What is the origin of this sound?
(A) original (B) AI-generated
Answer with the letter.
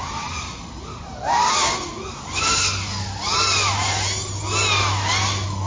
A